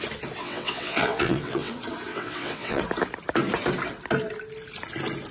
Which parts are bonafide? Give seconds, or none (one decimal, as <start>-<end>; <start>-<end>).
0.0-0.4; 1.7-2.1; 2.8-5.3

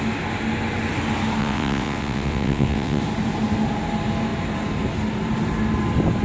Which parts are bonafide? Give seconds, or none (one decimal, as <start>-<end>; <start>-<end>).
0.0-1.4; 3.0-6.2

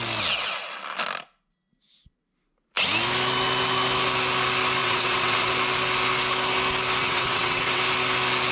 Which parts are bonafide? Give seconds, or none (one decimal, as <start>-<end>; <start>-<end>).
0.0-4.8; 5.5-7.0; 7.8-8.5